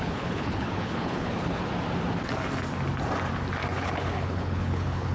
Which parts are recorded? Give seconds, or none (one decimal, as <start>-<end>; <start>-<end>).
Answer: 1.7-3.7